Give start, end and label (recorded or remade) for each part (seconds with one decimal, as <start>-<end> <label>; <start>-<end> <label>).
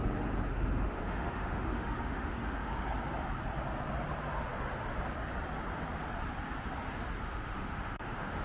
0.0-0.5 recorded; 0.5-2.7 remade; 2.7-7.2 recorded; 7.2-8.4 remade